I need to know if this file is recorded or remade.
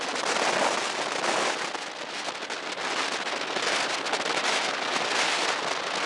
recorded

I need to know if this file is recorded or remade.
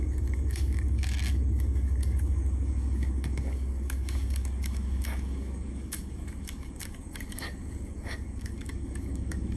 remade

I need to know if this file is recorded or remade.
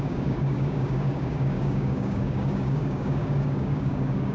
remade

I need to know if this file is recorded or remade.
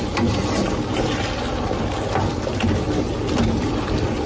recorded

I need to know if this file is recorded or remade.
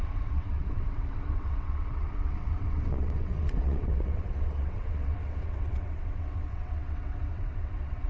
remade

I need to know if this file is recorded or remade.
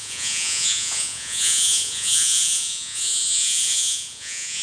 remade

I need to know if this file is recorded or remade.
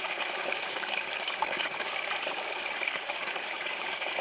remade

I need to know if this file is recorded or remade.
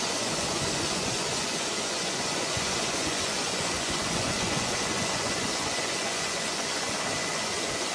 remade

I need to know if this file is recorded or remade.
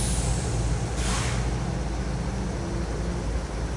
recorded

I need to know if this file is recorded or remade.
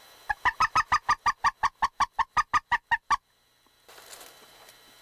recorded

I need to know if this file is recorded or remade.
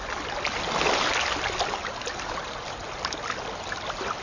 recorded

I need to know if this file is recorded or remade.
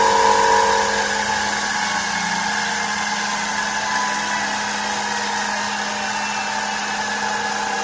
recorded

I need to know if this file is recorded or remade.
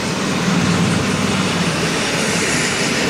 recorded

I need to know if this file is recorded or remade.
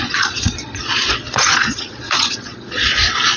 remade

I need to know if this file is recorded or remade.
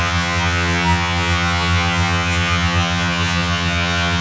remade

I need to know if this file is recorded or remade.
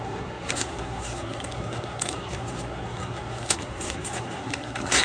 remade